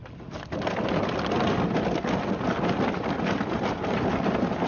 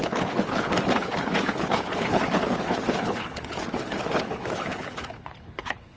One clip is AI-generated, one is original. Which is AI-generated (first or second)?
second